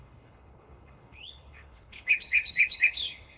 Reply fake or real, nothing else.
fake